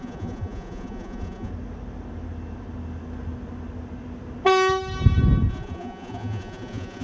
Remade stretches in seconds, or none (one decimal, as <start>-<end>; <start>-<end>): 0.0-1.5; 5.5-7.0